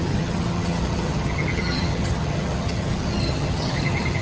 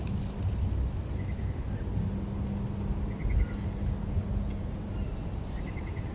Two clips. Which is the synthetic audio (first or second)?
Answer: first